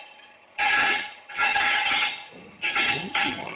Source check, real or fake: fake